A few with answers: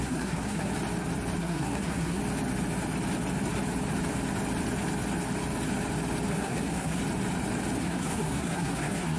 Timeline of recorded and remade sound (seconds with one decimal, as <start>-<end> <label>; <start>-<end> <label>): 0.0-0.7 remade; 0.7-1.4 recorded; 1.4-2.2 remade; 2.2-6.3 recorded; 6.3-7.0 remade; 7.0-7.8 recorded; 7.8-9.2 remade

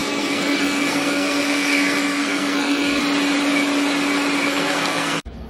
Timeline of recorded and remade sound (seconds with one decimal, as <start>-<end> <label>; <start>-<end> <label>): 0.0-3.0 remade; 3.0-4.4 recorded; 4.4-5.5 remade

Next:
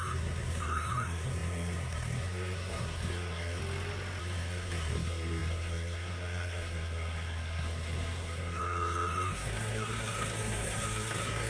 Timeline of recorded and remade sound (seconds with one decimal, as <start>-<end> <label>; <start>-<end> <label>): 0.0-3.6 remade; 3.6-4.2 recorded; 4.2-11.5 remade